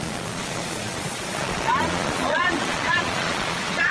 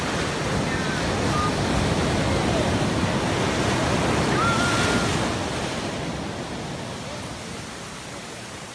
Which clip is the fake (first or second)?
first